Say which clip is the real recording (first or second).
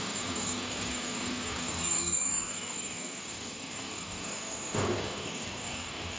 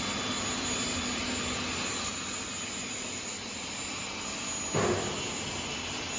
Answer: second